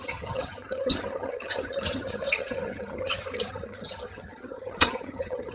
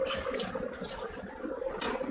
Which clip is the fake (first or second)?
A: first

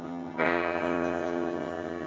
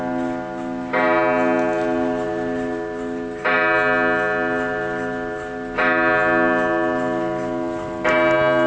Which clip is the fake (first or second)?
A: first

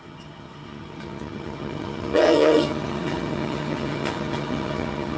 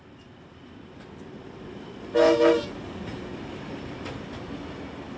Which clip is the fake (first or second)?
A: first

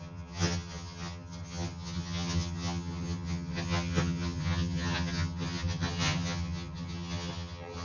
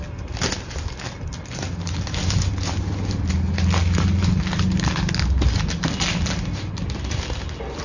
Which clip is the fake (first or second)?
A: first